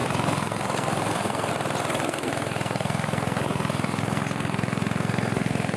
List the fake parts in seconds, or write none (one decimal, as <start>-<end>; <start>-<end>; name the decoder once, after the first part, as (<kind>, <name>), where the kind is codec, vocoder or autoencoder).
0.0-1.5 (codec, SNAC); 1.9-5.8